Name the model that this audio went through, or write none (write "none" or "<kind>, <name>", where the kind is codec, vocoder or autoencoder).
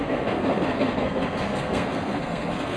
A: codec, SNAC